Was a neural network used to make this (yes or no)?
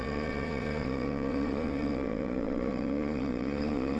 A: yes